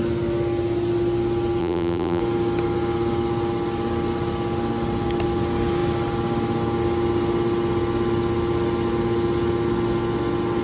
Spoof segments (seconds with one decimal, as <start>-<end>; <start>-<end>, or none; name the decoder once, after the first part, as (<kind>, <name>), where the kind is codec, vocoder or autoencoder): 1.6-2.2 (vocoder, BigVGAN v2)